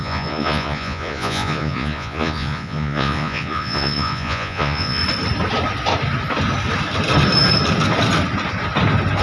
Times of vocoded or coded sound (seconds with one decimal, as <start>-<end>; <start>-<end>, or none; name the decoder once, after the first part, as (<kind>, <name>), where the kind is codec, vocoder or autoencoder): 0.0-5.0 (vocoder, Vocos)